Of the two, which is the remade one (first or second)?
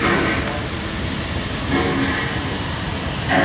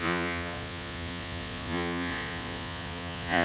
second